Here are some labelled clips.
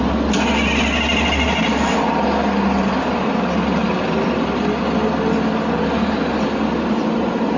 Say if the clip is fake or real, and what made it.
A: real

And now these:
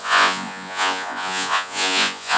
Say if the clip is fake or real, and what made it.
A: fake, vocoder, Vocos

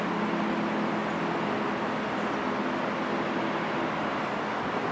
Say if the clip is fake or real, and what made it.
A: real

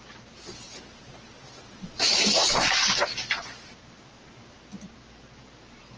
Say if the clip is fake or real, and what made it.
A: real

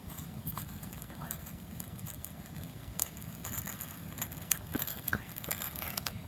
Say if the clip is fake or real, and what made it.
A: fake, codec, SNAC